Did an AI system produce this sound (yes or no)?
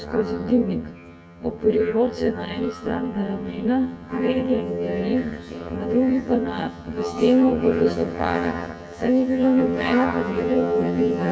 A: yes